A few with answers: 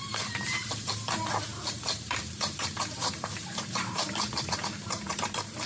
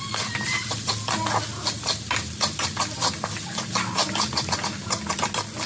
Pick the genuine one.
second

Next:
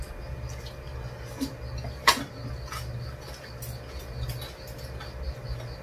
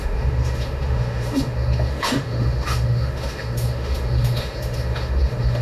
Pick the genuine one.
first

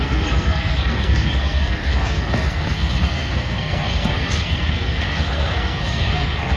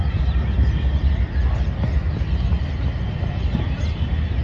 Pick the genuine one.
second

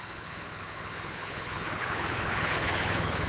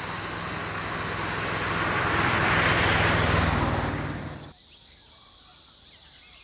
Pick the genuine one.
second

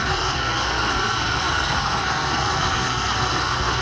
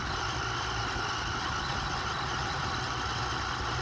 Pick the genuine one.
second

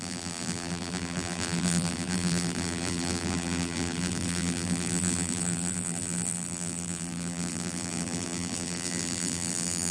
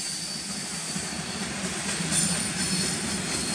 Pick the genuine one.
second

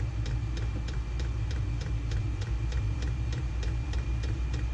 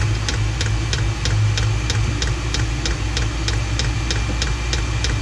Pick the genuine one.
second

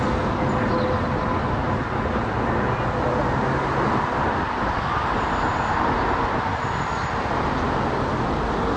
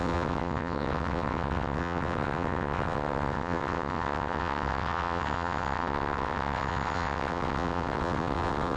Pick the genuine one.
first